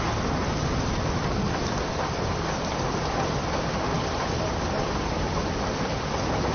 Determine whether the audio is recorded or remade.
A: recorded